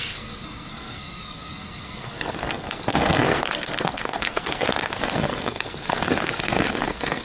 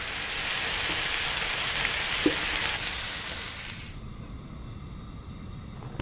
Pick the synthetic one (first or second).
first